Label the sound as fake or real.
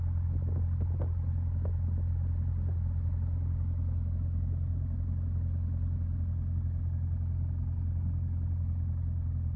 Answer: real